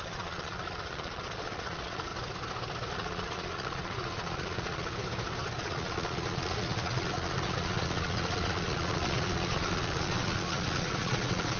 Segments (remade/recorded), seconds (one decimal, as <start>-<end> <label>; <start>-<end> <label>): 0.0-2.1 remade; 2.1-2.9 recorded; 2.9-4.9 remade; 4.9-5.6 recorded; 5.6-11.6 remade